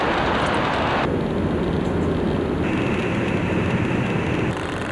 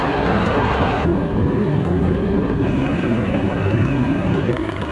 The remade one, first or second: second